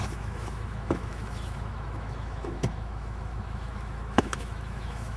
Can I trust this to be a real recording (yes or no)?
no